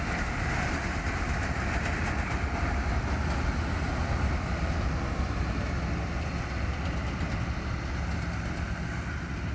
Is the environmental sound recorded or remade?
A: recorded